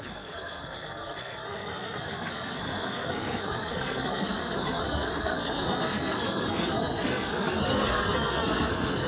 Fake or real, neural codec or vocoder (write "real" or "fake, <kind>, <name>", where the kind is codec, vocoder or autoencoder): fake, codec, SNAC